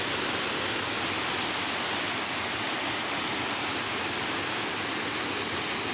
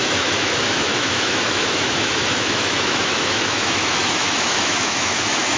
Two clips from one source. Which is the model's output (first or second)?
second